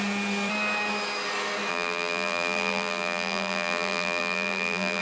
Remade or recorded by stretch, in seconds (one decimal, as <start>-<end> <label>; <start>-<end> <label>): 0.0-1.7 recorded; 1.7-5.0 remade